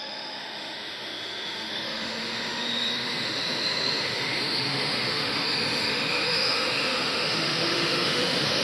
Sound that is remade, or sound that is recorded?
remade